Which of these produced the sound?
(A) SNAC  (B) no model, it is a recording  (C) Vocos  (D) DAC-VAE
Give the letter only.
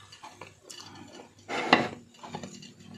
B